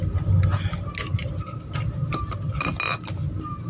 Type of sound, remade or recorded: recorded